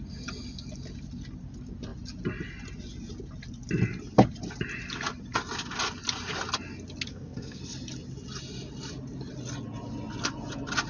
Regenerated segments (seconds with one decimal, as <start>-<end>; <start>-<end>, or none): 7.1-7.6